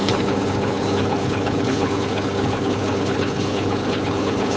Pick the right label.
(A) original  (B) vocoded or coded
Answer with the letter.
B